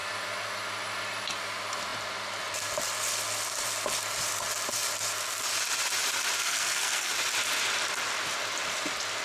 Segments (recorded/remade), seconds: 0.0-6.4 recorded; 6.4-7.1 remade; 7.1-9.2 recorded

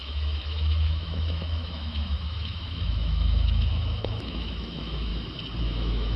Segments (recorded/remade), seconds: 0.0-5.1 remade; 5.1-5.6 recorded; 5.6-6.2 remade

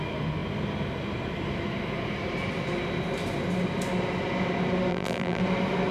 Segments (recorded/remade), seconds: 0.0-4.9 recorded; 4.9-5.4 remade; 5.4-5.9 recorded

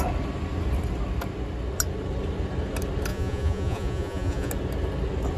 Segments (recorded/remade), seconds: 0.0-3.1 recorded; 3.1-4.5 remade; 4.5-5.4 recorded

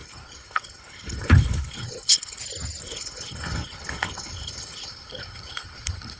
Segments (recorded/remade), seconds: 0.0-2.4 remade; 2.4-2.8 recorded; 2.8-6.2 remade

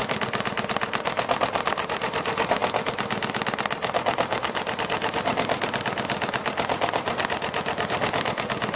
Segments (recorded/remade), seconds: 0.0-8.8 recorded

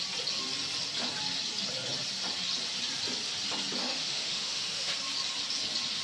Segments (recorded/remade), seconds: 0.0-3.8 recorded; 3.8-4.9 remade; 4.9-6.0 recorded